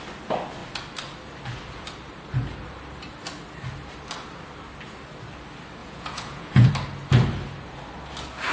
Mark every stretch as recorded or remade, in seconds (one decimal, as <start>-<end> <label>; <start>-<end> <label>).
0.0-5.8 recorded; 5.8-6.7 remade; 6.7-8.5 recorded